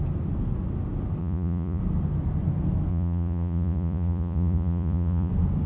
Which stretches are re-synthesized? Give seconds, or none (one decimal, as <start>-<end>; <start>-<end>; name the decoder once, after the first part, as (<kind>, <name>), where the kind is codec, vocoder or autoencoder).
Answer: 1.2-1.8 (vocoder, Vocos); 2.9-5.3